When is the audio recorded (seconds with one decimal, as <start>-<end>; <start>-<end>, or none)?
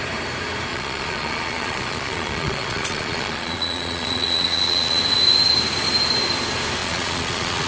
0.0-0.7; 5.0-6.8